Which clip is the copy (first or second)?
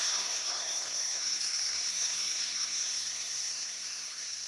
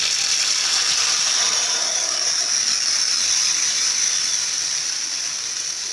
first